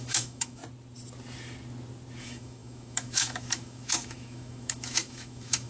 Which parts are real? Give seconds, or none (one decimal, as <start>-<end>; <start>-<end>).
0.6-2.2